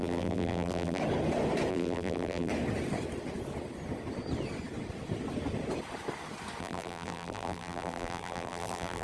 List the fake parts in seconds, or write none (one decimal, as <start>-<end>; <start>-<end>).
0.0-1.0; 1.7-2.5; 6.6-9.0